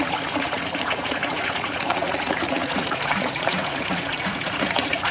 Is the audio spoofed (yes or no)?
yes